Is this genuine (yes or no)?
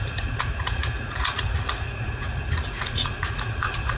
no